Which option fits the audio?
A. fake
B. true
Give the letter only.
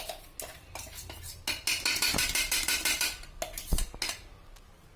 B